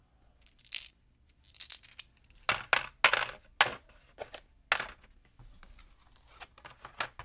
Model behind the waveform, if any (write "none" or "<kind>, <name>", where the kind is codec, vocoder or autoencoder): none